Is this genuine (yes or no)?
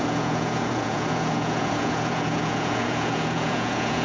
no